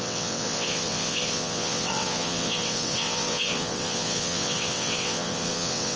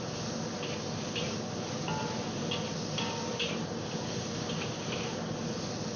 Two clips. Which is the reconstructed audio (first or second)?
first